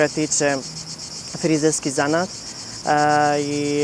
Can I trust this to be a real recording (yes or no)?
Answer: yes